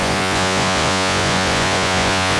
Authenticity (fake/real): fake